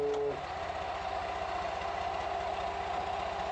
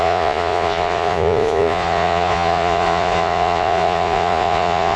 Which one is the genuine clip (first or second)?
first